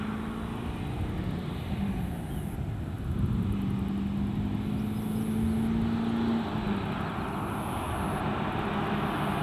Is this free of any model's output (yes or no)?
yes